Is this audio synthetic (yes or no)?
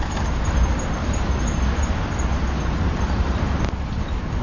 no